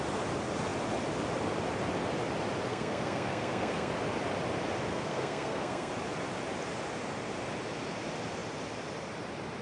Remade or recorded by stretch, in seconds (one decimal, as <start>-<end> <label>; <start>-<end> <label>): 0.0-2.7 recorded; 2.7-3.9 remade; 3.9-4.9 recorded; 4.9-5.9 remade; 5.9-9.6 recorded